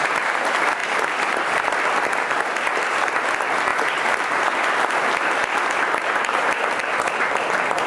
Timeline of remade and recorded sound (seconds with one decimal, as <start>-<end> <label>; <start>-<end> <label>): 0.0-0.8 recorded; 0.8-1.8 remade; 1.8-3.7 recorded; 3.7-4.4 remade; 4.4-5.4 recorded; 5.4-6.8 remade; 6.8-7.9 recorded